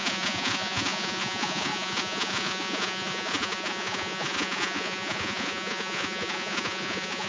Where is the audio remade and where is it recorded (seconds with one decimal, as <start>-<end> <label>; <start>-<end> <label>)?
0.0-7.3 remade